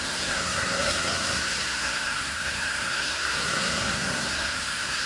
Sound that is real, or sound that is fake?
fake